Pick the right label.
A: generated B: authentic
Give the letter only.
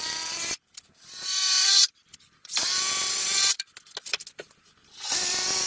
A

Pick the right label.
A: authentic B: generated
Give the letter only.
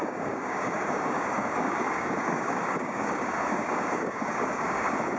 B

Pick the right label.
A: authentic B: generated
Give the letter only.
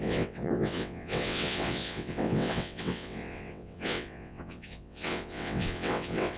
B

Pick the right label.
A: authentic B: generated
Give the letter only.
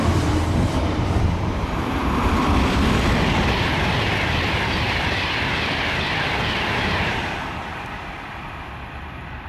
B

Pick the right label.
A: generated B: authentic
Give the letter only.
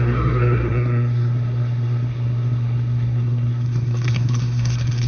A